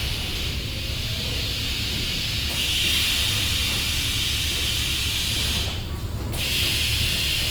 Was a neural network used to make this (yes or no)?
no